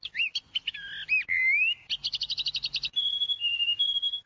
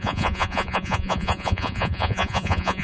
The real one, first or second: first